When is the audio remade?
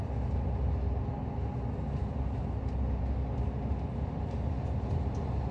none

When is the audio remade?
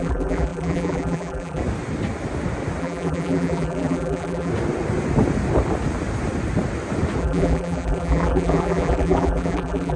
0.0-1.6 (vocoder, BigVGAN v2); 2.8-4.5; 7.2-10.0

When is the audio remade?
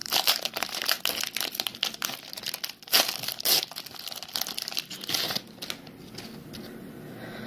0.0-1.0 (vocoder, BigVGAN v2)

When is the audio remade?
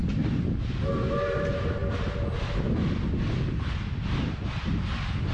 none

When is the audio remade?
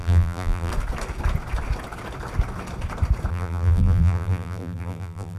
0.0-0.7 (vocoder, BigVGAN v2); 3.3-5.4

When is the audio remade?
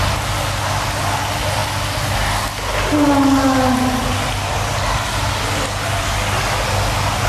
none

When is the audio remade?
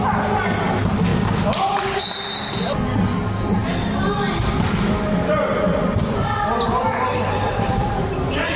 1.1-1.7 (vocoder, BigVGAN v2)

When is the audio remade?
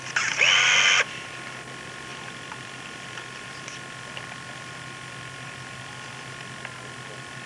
2.1-3.5 (vocoder, BigVGAN v2)